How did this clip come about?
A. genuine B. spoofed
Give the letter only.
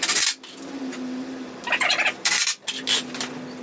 A